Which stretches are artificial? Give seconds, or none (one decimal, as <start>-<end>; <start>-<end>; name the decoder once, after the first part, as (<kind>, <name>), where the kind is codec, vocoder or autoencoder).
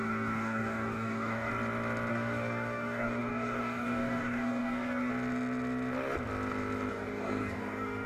0.0-1.5 (codec, DAC); 2.1-5.1; 6.9-8.1